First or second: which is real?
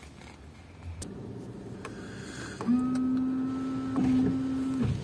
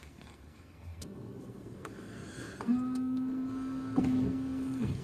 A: first